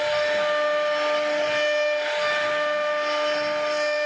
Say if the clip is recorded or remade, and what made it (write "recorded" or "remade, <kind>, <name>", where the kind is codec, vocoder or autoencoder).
recorded